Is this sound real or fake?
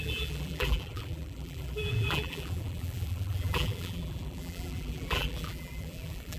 fake